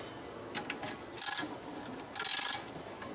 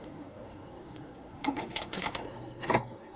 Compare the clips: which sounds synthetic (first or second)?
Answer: second